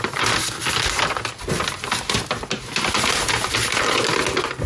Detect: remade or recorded recorded